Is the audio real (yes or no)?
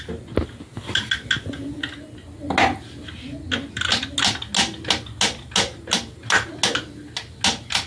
yes